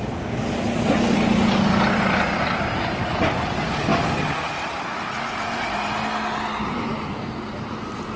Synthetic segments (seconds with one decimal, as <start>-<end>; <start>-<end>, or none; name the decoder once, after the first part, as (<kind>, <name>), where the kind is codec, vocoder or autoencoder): none